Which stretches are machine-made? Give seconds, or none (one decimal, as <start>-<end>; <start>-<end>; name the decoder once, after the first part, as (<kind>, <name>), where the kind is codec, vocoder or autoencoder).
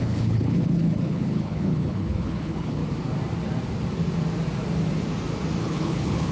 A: 0.0-2.8 (codec, HILCodec); 5.6-6.3